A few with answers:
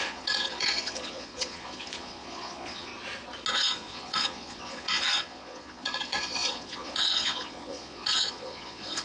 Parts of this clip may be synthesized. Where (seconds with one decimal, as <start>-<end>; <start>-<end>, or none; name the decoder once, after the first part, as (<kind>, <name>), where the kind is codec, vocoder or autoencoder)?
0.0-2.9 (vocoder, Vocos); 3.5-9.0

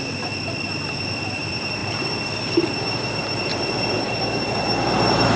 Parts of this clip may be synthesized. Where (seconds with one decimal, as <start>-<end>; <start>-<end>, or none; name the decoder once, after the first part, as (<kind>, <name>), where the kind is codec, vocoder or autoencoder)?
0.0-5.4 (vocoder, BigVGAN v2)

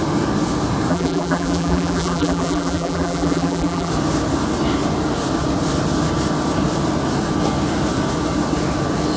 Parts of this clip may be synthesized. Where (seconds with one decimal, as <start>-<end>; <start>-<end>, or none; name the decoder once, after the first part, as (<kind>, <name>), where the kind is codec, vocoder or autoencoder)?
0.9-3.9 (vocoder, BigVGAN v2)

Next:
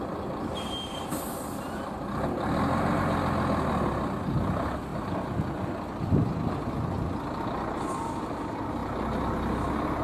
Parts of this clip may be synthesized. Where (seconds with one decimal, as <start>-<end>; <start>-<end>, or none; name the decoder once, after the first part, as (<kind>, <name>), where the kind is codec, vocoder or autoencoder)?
none

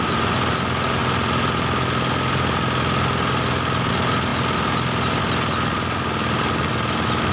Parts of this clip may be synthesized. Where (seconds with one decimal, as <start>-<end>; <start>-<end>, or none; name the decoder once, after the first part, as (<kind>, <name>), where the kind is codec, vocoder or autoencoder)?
none